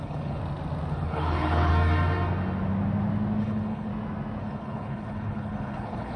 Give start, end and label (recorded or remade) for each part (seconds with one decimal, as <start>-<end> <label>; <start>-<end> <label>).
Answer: 0.0-0.4 remade; 0.4-0.9 recorded; 0.9-1.7 remade; 1.7-3.4 recorded; 3.4-3.9 remade; 3.9-4.4 recorded; 4.4-6.2 remade